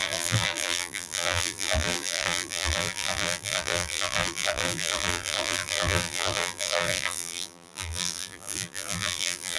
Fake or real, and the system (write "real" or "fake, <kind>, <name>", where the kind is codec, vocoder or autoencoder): fake, vocoder, BigVGAN v2